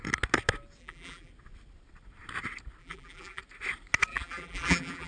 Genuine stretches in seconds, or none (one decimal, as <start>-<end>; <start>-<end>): 0.0-0.8; 1.3-2.8; 3.4-4.1